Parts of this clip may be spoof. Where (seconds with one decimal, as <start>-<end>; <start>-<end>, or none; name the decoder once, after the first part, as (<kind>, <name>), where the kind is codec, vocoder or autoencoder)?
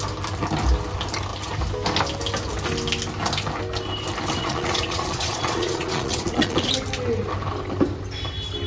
4.4-6.7 (vocoder, Vocos)